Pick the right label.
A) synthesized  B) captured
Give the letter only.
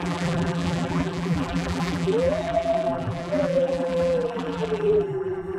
A